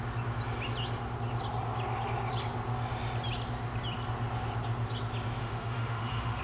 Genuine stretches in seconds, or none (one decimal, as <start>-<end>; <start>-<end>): 0.0-5.4